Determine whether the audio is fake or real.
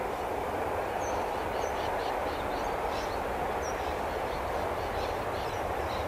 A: real